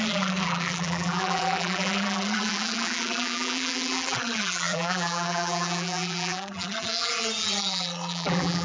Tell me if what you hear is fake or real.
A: fake